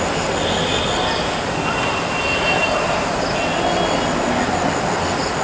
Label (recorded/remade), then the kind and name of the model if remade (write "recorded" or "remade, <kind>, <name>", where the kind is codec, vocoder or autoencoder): recorded